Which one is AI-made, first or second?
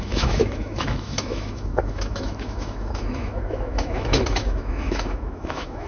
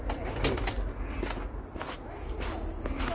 first